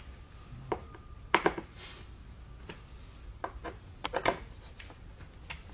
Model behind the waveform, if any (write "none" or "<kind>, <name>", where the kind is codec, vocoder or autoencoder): none